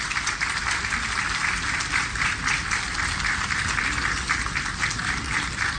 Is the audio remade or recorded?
recorded